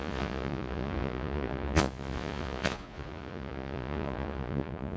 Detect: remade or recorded remade